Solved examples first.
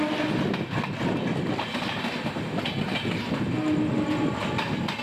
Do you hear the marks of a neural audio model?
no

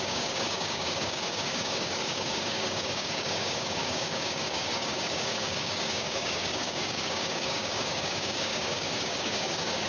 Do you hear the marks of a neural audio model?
yes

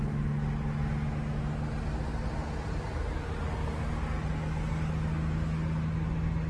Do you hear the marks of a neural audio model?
no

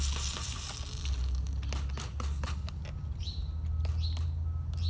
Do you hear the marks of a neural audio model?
no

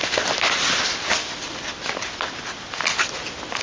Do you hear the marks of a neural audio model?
no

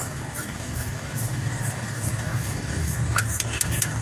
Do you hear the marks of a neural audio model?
yes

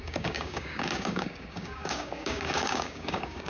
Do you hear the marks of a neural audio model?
yes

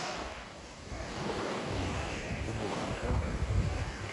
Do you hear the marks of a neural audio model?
yes